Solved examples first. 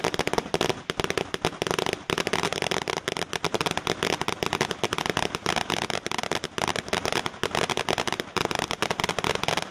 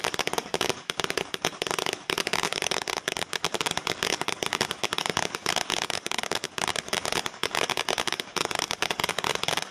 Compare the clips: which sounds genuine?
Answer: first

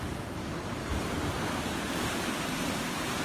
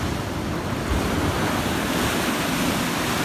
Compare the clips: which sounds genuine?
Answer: second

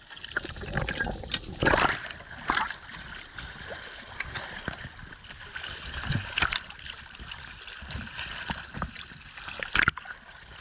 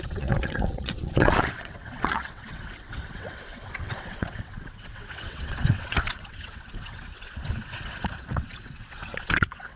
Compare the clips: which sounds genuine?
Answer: first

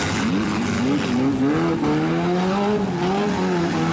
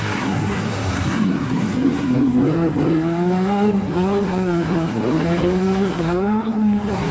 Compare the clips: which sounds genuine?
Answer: first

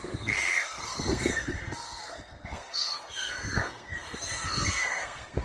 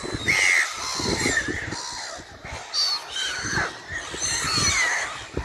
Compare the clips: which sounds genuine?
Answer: second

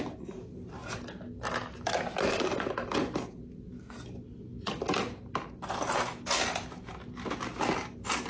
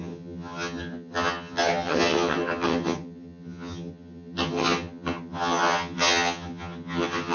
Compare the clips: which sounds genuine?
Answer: first